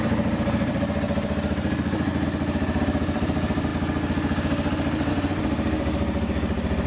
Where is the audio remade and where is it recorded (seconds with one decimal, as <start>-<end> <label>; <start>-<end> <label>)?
0.0-2.1 remade; 2.1-2.8 recorded; 2.8-3.7 remade; 3.7-5.1 recorded; 5.1-6.9 remade